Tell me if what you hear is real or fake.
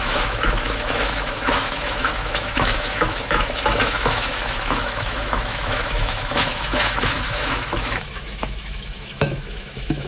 fake